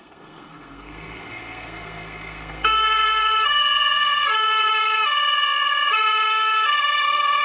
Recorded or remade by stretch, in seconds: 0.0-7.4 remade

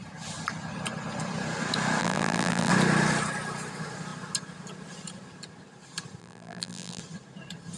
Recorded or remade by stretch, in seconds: 0.0-2.0 recorded; 2.0-2.7 remade; 2.7-6.2 recorded; 6.2-7.0 remade; 7.0-7.8 recorded

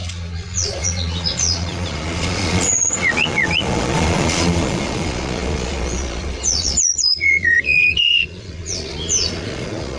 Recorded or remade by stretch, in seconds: 0.0-10.0 remade

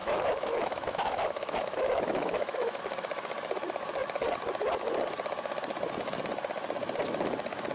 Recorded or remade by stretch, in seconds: 0.0-2.8 remade; 2.8-7.7 recorded

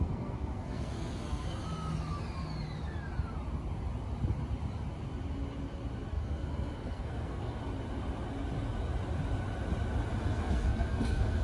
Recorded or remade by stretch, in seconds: 0.0-1.6 remade; 1.6-6.1 recorded; 6.1-7.6 remade; 7.6-10.2 recorded; 10.2-11.4 remade